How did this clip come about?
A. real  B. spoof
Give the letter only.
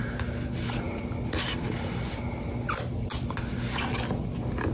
A